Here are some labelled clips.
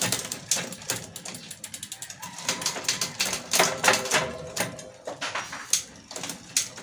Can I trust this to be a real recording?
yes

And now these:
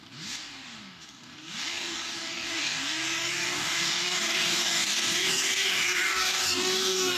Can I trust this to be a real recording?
no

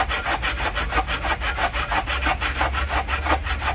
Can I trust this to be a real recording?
yes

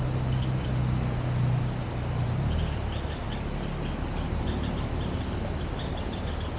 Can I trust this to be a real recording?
yes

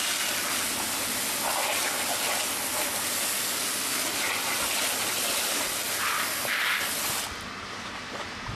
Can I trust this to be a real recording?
yes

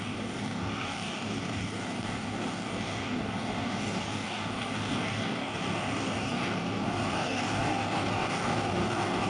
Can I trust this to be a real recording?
no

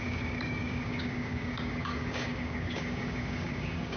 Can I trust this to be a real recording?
no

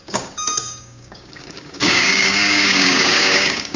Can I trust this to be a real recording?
no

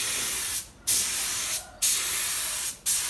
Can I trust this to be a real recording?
yes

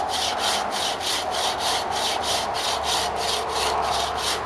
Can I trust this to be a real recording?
yes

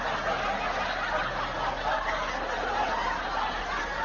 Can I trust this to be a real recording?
yes